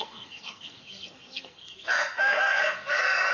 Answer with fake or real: fake